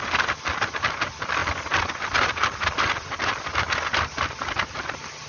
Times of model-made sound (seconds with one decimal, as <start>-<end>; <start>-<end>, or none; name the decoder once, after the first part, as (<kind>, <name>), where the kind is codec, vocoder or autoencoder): none